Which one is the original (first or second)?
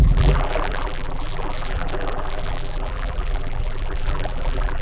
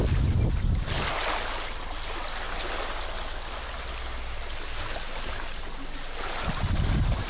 second